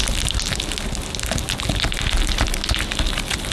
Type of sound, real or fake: real